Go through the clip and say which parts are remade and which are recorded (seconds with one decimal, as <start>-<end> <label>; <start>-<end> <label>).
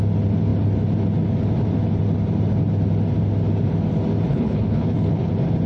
0.0-4.3 recorded; 4.3-5.3 remade; 5.3-5.7 recorded